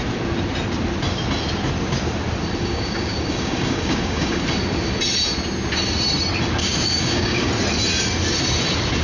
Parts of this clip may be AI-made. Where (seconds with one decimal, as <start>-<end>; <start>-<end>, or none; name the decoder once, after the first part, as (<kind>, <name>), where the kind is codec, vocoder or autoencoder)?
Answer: 2.6-4.4 (codec, DAC); 6.6-7.5